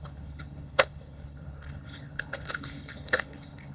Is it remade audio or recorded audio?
remade